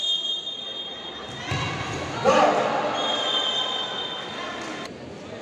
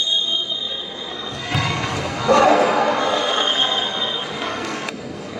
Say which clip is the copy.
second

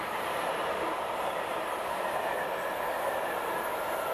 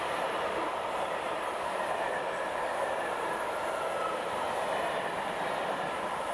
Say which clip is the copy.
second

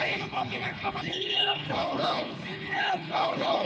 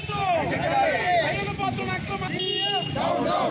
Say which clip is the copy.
first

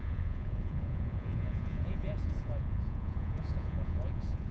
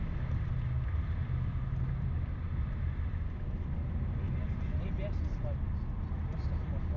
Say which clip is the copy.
first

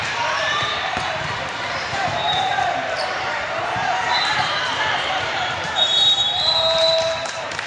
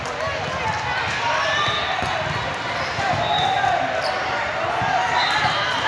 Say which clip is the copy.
first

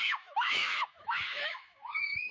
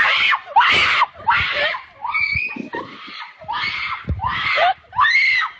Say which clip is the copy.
first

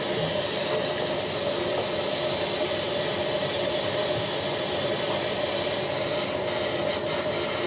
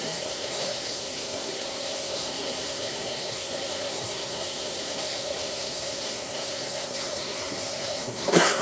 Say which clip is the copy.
second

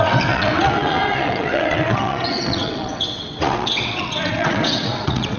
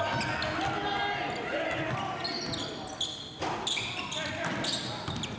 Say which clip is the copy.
first